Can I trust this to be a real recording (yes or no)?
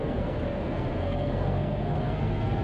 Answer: no